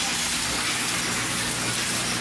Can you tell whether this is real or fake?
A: real